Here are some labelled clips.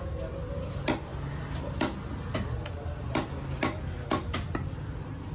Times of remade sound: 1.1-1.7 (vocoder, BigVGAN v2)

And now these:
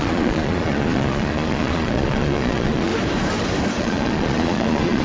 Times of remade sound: 0.0-2.9 (vocoder, Vocos); 3.8-5.0

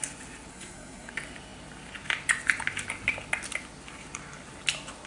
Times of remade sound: 0.5-1.1 (codec, SNAC)

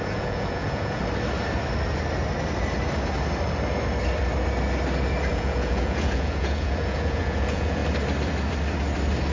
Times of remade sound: 0.0-1.0 (vocoder, Vocos); 5.3-7.8

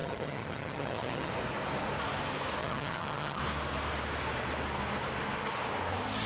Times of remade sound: 0.0-1.3 (vocoder, HiFi-GAN); 2.6-3.4

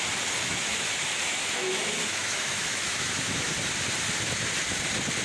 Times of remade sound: 0.4-3.5 (autoencoder, DAC-VAE)

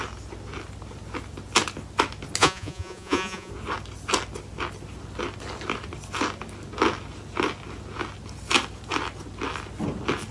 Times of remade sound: 2.4-3.5 (vocoder, Vocos)